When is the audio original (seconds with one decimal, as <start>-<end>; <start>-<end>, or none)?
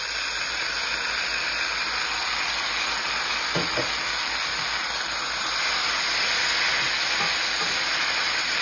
0.0-8.6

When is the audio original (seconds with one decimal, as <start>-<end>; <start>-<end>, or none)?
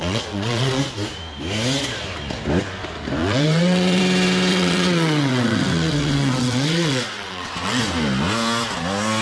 0.8-3.2; 4.0-4.5; 7.8-9.2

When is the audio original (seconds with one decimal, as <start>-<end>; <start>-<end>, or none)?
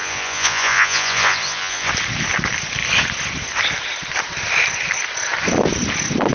1.9-6.3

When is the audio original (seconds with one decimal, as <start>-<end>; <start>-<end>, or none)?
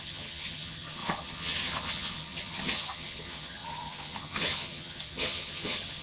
none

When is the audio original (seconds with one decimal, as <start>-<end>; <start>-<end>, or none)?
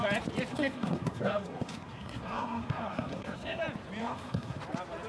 0.0-0.5; 3.6-4.0; 4.6-5.1